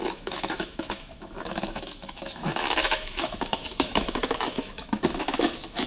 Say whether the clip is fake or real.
fake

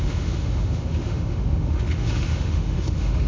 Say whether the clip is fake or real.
fake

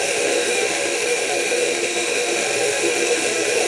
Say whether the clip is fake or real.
fake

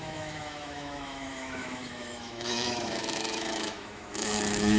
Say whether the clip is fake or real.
fake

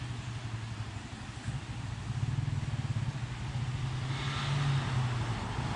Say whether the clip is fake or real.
real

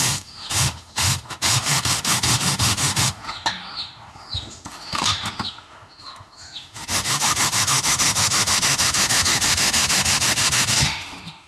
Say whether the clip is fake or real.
fake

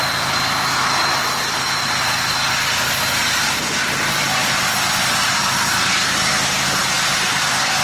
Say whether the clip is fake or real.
real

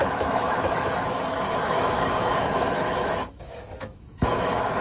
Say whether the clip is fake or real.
fake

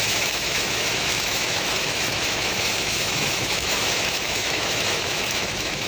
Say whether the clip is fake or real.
fake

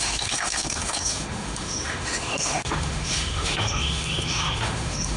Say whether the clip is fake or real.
fake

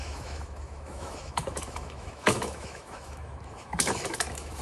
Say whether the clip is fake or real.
fake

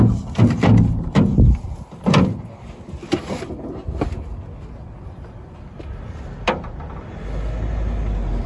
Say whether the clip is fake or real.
real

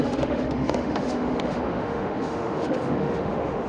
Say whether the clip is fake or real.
fake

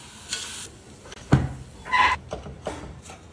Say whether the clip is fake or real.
real